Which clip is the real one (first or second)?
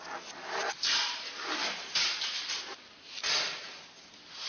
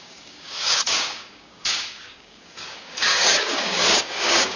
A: first